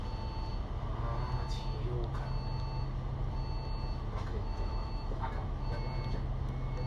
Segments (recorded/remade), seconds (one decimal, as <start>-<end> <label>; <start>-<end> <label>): 0.0-4.3 recorded; 4.3-5.3 remade; 5.3-6.9 recorded